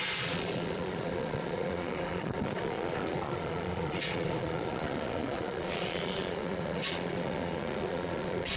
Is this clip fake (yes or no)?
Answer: yes